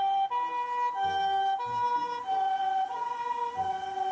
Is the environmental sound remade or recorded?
recorded